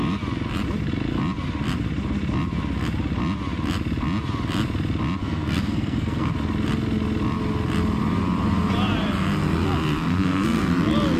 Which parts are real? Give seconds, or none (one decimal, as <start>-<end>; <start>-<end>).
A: 0.0-5.2; 6.3-10.1; 10.7-11.2